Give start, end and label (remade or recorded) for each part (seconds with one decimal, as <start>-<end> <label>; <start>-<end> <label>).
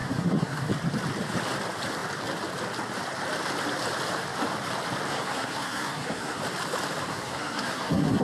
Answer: 0.0-0.7 remade; 0.7-5.1 recorded; 5.1-6.4 remade; 6.4-7.1 recorded; 7.1-8.2 remade